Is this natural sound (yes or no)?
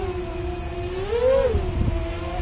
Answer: yes